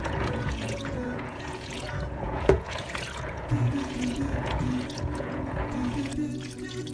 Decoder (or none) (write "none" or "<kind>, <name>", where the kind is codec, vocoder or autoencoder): vocoder, Vocos